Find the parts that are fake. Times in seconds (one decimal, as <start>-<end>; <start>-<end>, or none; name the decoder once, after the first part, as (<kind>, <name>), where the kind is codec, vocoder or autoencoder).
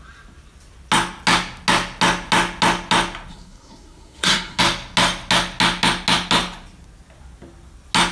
3.3-4.6 (codec, SNAC)